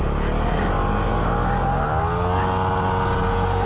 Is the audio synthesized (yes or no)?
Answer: no